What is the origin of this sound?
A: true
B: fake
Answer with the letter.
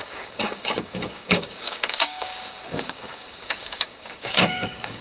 B